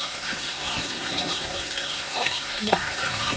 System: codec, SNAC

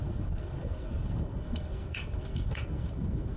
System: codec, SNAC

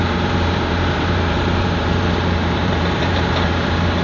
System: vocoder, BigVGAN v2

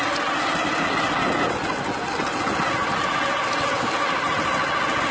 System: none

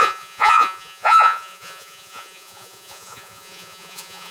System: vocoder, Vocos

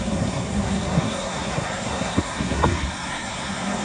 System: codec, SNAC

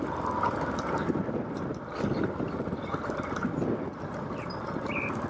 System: none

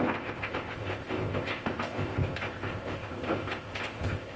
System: codec, ZipCodec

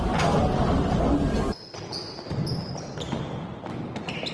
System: none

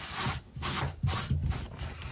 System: none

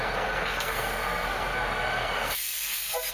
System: codec, SNAC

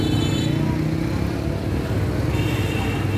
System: none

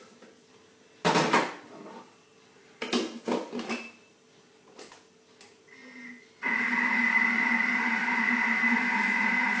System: none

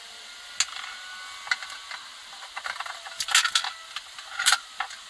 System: none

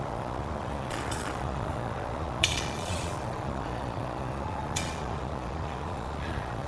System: vocoder, Vocos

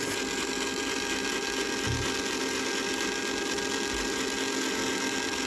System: none